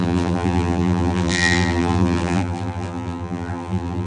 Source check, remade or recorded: remade